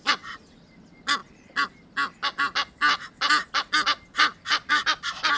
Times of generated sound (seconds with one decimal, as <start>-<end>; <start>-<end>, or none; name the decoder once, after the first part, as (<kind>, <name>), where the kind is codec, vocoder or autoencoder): none